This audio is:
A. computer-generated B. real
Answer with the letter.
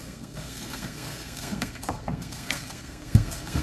A